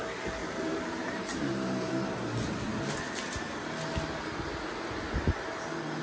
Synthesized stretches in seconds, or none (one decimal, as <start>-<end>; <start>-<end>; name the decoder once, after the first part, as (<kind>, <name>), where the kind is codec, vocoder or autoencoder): 0.4-1.9 (vocoder, BigVGAN v2)